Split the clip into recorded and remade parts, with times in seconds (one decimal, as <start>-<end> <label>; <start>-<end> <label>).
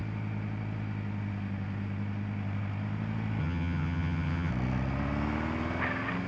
0.0-3.4 recorded; 3.4-4.5 remade; 4.5-6.3 recorded